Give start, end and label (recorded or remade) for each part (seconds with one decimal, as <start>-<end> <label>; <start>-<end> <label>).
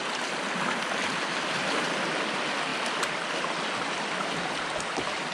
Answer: 0.0-5.3 recorded